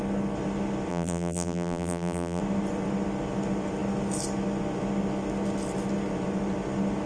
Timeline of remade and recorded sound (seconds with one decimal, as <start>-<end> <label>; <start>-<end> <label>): 0.0-0.9 recorded; 0.9-2.4 remade; 2.4-7.1 recorded